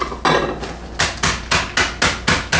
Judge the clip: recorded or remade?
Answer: recorded